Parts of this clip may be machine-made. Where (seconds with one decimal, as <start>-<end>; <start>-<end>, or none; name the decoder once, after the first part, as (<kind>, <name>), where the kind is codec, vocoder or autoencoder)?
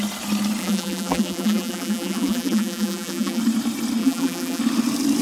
0.6-3.4 (vocoder, BigVGAN v2); 4.0-4.6